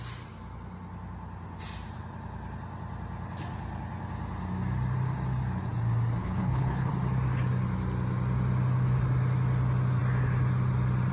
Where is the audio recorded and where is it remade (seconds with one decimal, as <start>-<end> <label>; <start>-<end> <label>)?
0.0-6.2 recorded; 6.2-6.9 remade; 6.9-11.1 recorded